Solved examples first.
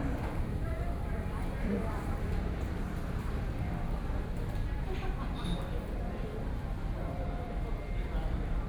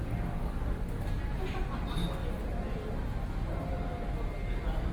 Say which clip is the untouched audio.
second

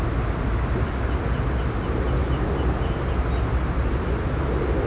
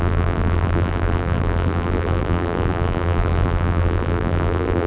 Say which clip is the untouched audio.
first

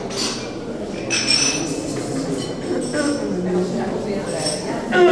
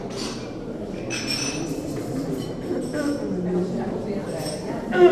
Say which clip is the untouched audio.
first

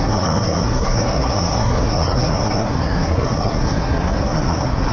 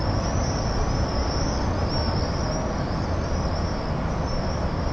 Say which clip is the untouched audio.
second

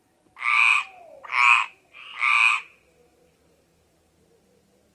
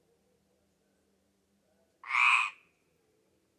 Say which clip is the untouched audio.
second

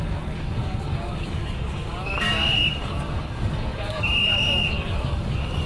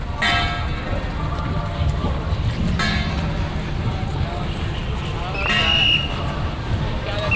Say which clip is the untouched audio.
second